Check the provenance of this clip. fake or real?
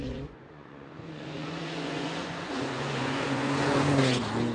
fake